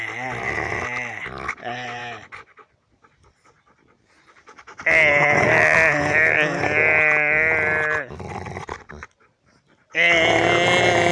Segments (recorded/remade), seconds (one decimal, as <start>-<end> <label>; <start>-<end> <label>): 0.0-11.1 recorded